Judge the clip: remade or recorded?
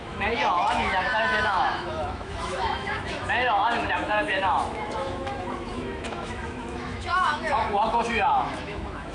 remade